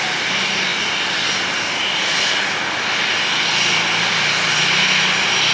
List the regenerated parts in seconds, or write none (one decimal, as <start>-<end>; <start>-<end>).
none